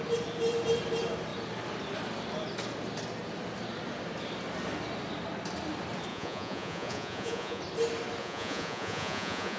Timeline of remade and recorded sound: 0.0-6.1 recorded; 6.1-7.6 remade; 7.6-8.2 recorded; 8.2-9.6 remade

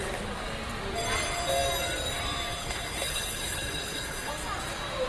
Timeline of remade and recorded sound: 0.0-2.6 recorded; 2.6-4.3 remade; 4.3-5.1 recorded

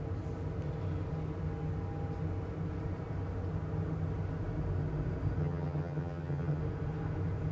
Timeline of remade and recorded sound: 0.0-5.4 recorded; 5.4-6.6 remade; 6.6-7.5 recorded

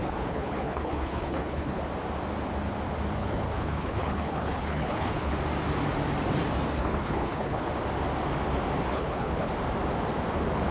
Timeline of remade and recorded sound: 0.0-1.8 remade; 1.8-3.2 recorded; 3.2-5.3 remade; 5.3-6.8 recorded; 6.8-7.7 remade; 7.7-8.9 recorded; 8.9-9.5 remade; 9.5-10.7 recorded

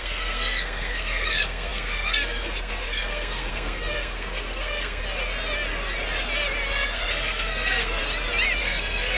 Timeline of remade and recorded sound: 0.0-5.0 remade; 5.0-6.7 recorded; 6.7-8.0 remade; 8.0-8.6 recorded; 8.6-9.2 remade